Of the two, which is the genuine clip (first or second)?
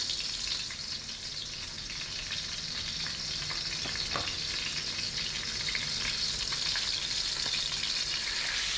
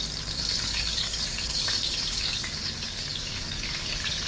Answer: first